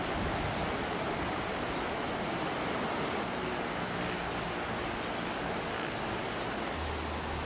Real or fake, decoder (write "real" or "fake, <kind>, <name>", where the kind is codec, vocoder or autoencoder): real